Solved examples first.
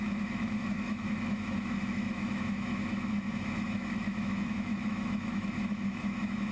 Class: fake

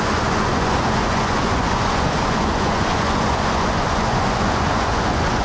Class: fake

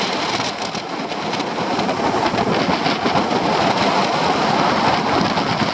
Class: real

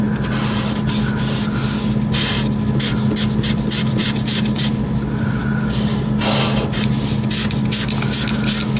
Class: real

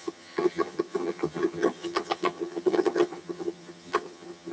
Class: fake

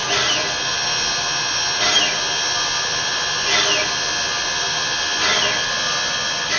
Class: real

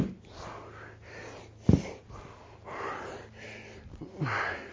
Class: real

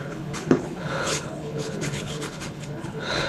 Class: fake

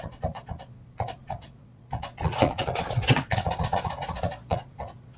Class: fake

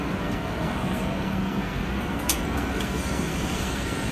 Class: fake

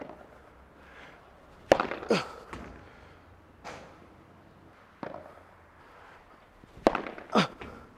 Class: real